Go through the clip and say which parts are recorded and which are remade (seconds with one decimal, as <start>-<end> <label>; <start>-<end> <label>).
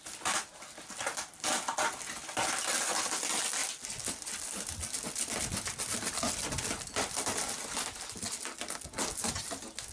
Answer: 0.0-9.9 recorded